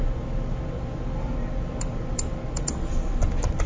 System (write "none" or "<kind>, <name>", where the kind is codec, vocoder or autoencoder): none